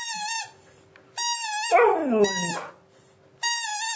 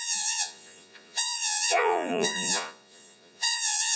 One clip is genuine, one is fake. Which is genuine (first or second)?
first